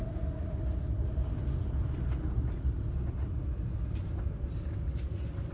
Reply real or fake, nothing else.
real